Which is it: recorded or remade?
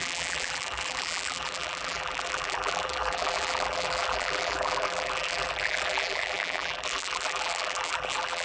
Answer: remade